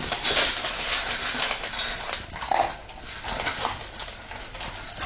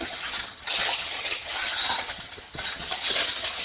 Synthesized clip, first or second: second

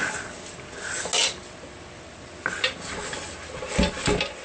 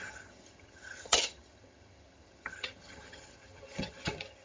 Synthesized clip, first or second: second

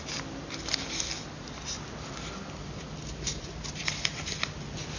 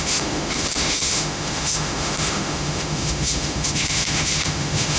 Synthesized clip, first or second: second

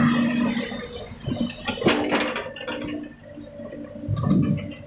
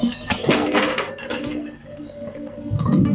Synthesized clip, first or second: second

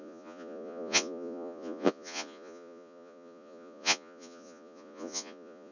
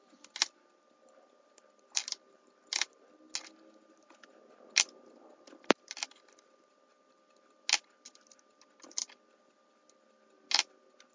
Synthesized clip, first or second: first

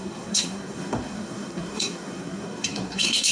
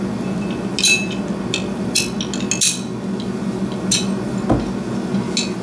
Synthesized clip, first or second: first